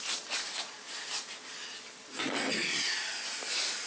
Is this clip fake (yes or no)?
no